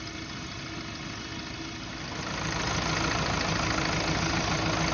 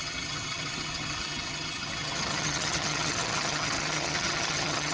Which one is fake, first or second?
second